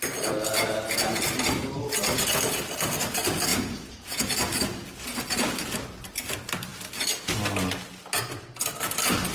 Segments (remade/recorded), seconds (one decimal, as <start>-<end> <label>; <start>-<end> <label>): 0.0-3.5 recorded; 3.5-4.3 remade; 4.3-9.3 recorded